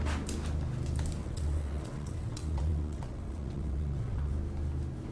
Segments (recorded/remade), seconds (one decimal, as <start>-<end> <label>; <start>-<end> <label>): 0.0-1.2 recorded; 1.2-4.3 remade; 4.3-5.1 recorded